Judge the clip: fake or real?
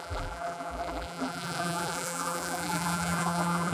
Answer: fake